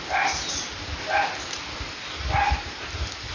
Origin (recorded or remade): recorded